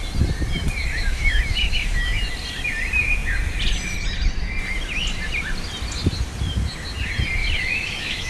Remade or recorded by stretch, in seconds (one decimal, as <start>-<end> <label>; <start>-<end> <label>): 0.0-1.1 recorded; 1.1-2.2 remade; 2.2-7.4 recorded; 7.4-8.3 remade